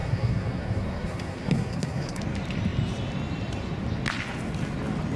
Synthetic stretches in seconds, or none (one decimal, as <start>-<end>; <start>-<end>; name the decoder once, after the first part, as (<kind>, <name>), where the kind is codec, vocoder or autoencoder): 0.0-2.2 (codec, SNAC)

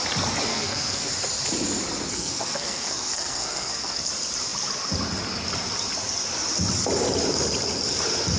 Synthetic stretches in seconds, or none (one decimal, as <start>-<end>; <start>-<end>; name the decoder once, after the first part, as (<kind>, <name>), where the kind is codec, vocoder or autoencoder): 0.5-1.1 (codec, SNAC); 2.1-4.1

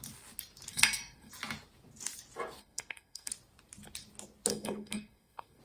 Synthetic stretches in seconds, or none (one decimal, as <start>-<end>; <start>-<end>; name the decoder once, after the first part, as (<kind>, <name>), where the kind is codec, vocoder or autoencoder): 0.7-1.3 (codec, SNAC); 2.6-3.3; 4.5-5.6

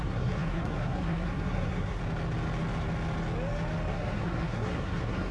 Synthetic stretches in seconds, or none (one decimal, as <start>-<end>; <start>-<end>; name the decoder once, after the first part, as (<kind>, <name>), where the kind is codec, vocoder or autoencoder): 0.0-2.0 (codec, SNAC); 3.9-5.3

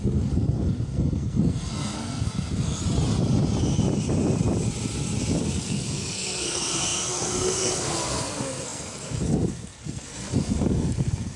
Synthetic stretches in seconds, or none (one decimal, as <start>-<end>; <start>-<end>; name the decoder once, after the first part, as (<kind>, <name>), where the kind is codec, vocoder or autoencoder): 0.0-2.8 (codec, SNAC); 5.4-11.4